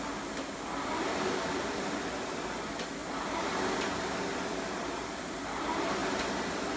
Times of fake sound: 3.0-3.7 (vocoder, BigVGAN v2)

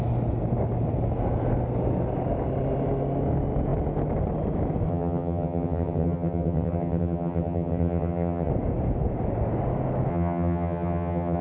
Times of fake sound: 4.9-8.5 (vocoder, HiFi-GAN); 10.1-11.4

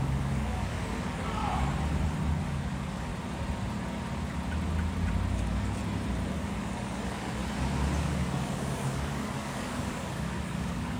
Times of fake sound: 0.0-1.4 (codec, DAC); 2.4-3.1; 5.3-5.8; 6.3-7.4; 8.0-11.0

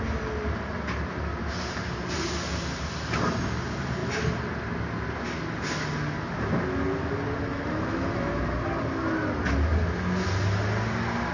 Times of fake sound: 7.5-8.4 (autoencoder, DAC-VAE)

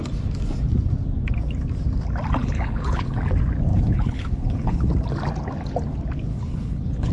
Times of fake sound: 2.4-3.2 (codec, HILCodec); 3.7-4.9; 6.3-7.1